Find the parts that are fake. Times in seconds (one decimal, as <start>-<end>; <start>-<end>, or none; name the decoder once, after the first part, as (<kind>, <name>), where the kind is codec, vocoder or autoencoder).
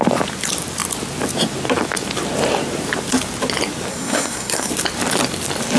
3.9-4.7 (codec, SNAC)